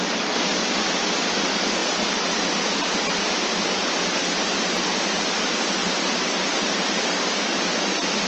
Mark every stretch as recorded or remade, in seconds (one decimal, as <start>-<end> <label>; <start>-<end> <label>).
0.0-8.3 recorded